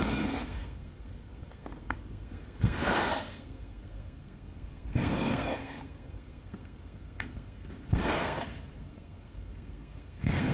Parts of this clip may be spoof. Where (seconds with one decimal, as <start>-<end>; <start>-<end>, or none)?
0.0-10.5